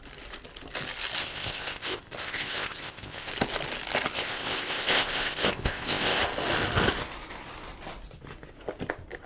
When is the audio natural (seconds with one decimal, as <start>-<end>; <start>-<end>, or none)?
0.0-1.2; 3.3-4.1; 6.2-9.3